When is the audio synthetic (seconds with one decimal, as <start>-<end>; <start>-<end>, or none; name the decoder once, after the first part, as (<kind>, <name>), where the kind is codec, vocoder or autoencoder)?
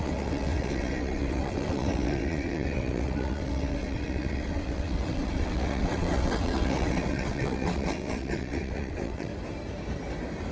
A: 0.0-9.3 (vocoder, WaveNeXt)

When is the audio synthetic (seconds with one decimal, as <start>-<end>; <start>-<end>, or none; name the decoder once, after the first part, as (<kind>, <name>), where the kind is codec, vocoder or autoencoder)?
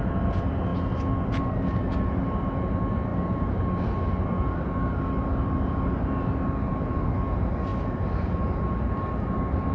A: none